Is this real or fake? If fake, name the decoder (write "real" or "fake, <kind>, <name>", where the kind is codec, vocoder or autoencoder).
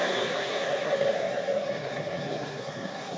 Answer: fake, codec, SNAC